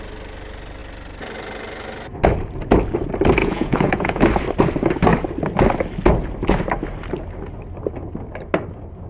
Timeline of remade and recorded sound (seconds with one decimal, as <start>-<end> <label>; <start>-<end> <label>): 0.0-3.4 recorded; 3.4-4.2 remade; 4.2-9.1 recorded